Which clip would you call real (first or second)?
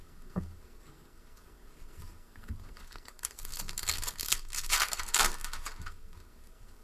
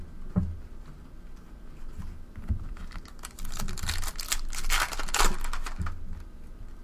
second